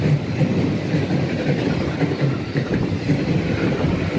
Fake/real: fake